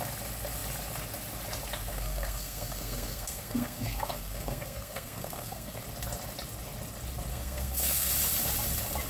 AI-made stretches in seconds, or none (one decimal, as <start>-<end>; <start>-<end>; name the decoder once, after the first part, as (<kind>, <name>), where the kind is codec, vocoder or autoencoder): 1.9-5.8 (codec, SNAC); 7.3-8.1